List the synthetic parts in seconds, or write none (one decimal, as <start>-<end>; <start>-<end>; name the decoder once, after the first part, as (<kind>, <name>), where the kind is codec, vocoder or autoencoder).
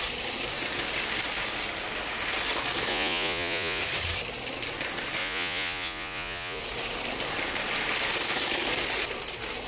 2.9-3.8 (vocoder, Vocos); 5.2-6.6